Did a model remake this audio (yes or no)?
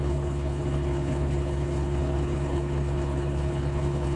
yes